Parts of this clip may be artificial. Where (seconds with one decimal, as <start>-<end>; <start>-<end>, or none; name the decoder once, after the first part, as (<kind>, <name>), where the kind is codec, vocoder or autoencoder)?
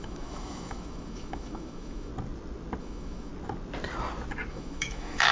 0.0-2.1 (autoencoder, DAC-VAE); 2.8-3.3; 4.5-5.3